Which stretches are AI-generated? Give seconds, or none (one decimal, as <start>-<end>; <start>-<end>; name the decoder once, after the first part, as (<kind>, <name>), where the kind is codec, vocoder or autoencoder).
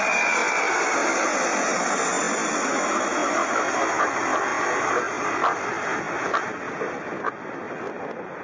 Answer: 0.4-1.9 (vocoder, BigVGAN v2)